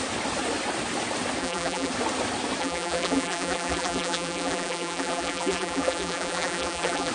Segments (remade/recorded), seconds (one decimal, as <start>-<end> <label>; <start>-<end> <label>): 0.0-1.4 recorded; 1.4-1.9 remade; 1.9-2.6 recorded; 2.6-7.1 remade